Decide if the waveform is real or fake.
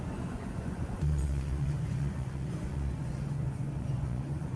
fake